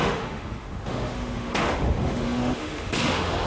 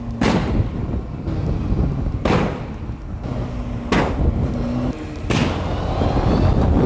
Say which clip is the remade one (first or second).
first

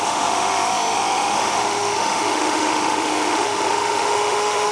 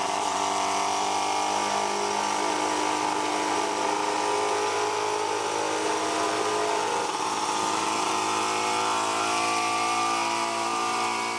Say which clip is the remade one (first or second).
first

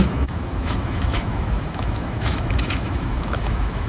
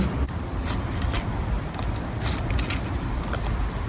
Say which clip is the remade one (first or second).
first